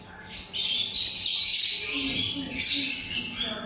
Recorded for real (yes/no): yes